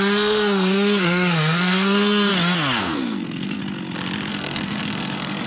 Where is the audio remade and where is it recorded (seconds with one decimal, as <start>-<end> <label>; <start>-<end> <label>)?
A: 0.0-2.3 remade; 2.3-2.8 recorded; 2.8-3.6 remade; 3.6-4.3 recorded; 4.3-5.5 remade